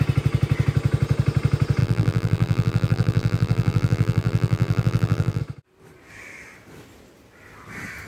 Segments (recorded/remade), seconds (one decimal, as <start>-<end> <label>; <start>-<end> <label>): 0.0-1.8 recorded; 1.8-5.4 remade; 5.4-8.1 recorded